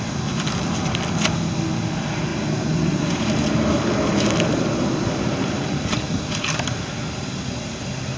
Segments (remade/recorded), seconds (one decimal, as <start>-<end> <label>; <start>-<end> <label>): 0.0-2.3 recorded; 2.3-6.8 remade; 6.8-8.2 recorded